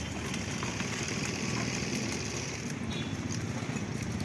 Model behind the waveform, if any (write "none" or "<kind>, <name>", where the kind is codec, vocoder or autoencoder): vocoder, BigVGAN v2